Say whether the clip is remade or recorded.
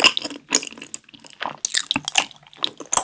recorded